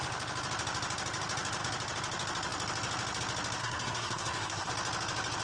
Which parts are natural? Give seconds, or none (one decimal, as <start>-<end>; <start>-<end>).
0.0-3.6; 4.7-5.4